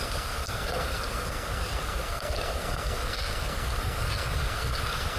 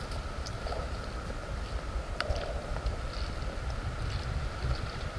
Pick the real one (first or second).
second